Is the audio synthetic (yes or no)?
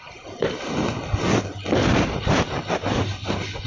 no